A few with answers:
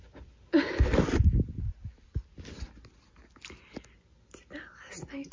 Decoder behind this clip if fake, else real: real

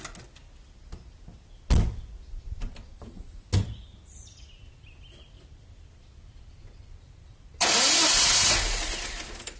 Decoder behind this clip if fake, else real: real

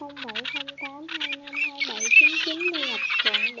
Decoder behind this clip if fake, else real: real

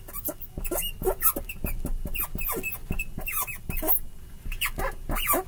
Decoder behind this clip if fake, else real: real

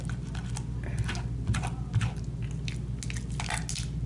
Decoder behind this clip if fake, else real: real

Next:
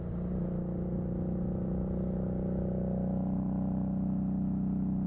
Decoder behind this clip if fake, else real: real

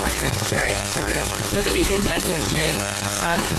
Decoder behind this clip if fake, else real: fake, codec, SNAC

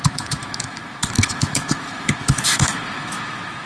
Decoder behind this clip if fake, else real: fake, autoencoder, DAC-VAE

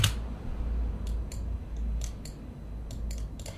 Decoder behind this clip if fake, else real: real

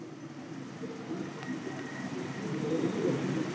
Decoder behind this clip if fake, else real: real